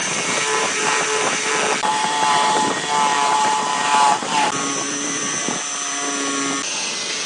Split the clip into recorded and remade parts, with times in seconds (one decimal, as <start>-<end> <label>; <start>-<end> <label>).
0.0-1.5 remade; 1.5-1.9 recorded; 1.9-2.7 remade; 2.7-3.1 recorded; 3.1-5.5 remade; 5.5-7.3 recorded